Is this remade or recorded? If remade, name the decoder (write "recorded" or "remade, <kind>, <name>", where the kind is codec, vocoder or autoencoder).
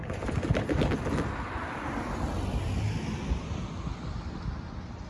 recorded